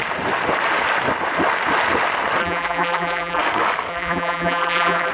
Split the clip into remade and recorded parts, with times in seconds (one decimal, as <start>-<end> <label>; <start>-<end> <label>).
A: 0.0-2.4 recorded; 2.4-3.4 remade; 3.4-3.9 recorded; 3.9-5.1 remade